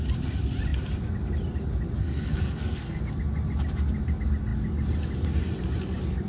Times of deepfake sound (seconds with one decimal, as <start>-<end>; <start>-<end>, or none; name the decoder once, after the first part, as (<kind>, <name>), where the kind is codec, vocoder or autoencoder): 2.0-3.0 (codec, SNAC)